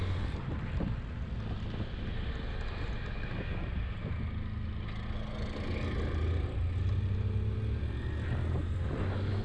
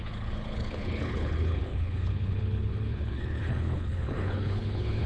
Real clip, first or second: first